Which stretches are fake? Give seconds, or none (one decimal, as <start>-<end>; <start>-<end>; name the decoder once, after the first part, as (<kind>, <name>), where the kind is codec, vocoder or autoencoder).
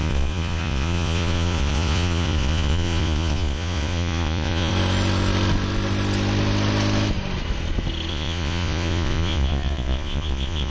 0.0-4.7 (vocoder, Vocos); 8.1-10.7